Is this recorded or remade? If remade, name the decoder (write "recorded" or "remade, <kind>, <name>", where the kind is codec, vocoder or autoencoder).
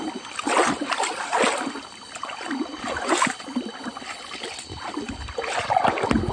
recorded